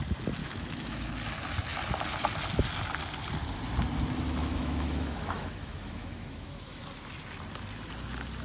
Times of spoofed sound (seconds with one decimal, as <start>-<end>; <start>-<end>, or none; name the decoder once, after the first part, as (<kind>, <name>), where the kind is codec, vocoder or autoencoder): 0.4-1.1 (autoencoder, DAC-VAE); 4.4-6.8